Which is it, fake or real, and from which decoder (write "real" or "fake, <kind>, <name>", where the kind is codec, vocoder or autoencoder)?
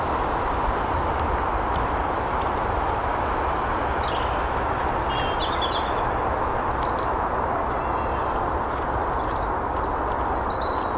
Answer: real